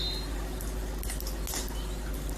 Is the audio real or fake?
real